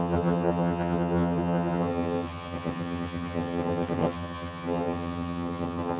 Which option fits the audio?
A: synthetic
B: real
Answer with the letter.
A